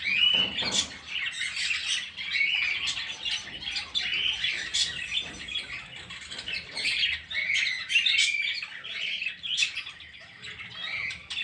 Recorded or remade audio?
recorded